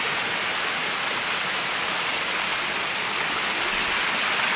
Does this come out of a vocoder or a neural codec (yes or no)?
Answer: no